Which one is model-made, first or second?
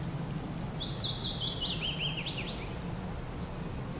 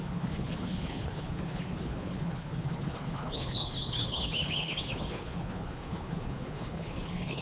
second